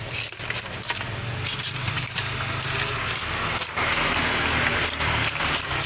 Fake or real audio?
real